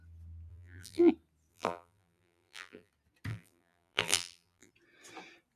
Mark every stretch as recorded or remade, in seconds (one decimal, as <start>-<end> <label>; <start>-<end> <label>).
0.0-0.5 recorded; 0.5-1.1 remade; 1.1-1.5 recorded; 1.5-2.9 remade; 2.9-3.3 recorded; 3.3-4.7 remade; 4.7-5.6 recorded